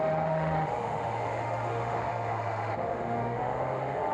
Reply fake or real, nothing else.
fake